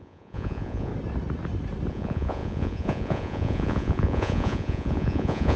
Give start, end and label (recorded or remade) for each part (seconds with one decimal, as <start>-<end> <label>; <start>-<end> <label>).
0.0-0.9 remade; 0.9-1.9 recorded; 1.9-5.6 remade